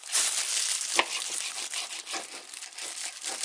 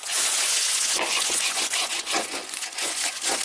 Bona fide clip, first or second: first